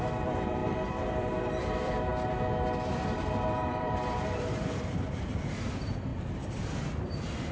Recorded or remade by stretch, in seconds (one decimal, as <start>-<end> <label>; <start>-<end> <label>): 0.0-2.1 remade; 2.1-2.9 recorded; 2.9-6.1 remade; 6.1-7.0 recorded; 7.0-7.5 remade